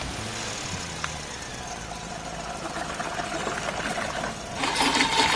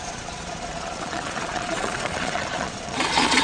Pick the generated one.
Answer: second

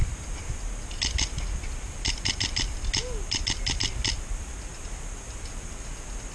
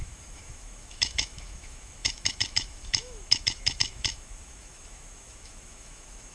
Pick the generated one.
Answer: second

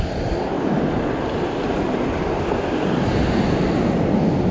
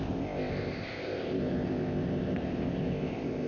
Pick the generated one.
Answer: second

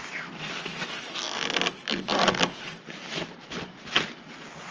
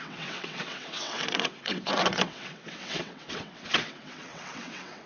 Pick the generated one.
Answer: second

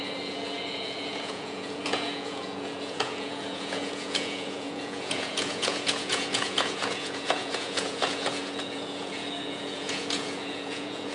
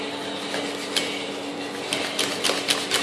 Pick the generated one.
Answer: first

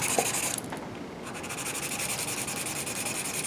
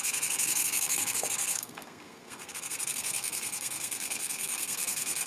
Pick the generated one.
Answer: second